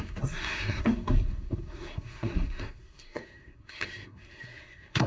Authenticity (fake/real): fake